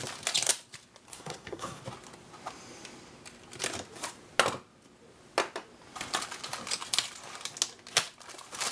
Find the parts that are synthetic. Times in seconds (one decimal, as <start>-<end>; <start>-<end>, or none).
1.1-1.8